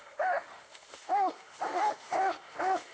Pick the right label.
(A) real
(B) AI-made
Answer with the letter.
B